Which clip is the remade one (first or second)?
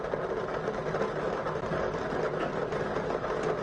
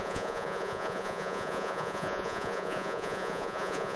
second